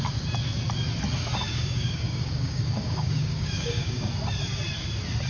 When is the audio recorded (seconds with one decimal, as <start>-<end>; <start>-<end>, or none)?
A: 0.0-1.5; 4.1-5.3